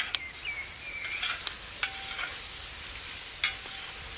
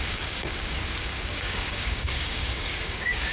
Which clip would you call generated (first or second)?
second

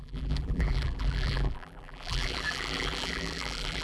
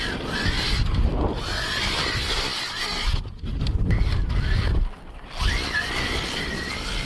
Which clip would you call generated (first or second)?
first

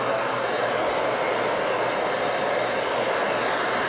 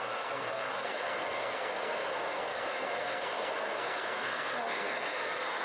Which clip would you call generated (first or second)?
second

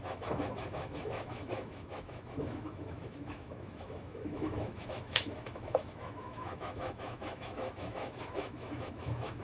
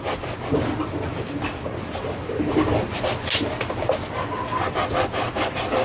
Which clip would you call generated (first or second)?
first